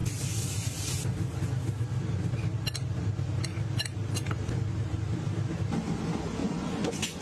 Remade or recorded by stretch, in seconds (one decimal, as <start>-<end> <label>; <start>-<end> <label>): 0.0-6.4 recorded; 6.4-7.2 remade